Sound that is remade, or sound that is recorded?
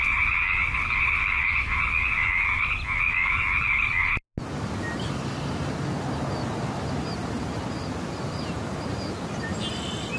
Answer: recorded